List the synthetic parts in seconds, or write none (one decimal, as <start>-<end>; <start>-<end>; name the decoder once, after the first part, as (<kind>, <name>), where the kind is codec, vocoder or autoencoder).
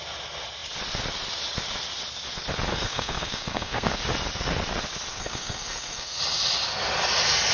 2.7-4.0 (codec, SNAC); 5.1-6.2